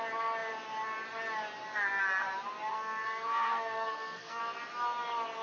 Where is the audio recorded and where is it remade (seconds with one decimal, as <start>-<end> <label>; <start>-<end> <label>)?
0.0-2.7 recorded; 2.7-4.4 remade; 4.4-5.4 recorded

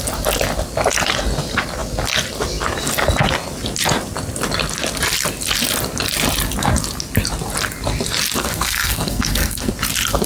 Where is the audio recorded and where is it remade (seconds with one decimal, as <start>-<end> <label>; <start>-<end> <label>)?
0.0-8.4 recorded; 8.4-9.7 remade; 9.7-10.3 recorded